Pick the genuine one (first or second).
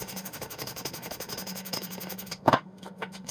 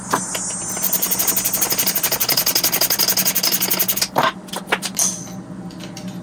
second